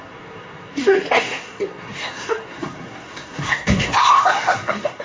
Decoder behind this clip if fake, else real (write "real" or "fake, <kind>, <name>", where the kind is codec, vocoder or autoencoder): fake, codec, SNAC